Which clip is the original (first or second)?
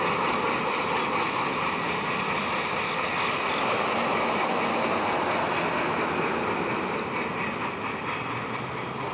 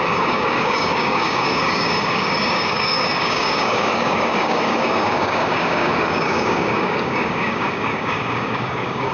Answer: first